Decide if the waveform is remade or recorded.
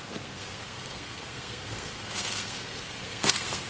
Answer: remade